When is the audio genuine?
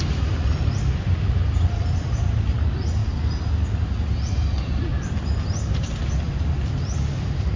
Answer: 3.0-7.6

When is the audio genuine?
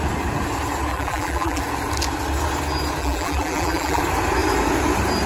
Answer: 0.0-0.9; 1.6-3.0; 4.0-5.3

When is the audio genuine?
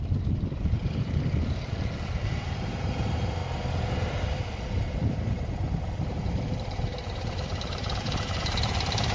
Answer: 3.4-6.0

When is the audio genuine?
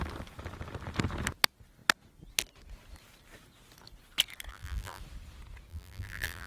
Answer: 0.0-4.5; 5.0-5.7